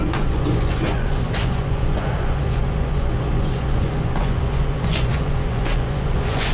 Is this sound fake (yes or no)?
yes